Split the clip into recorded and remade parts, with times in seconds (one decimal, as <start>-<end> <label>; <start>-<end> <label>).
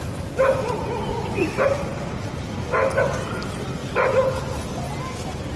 0.0-5.6 recorded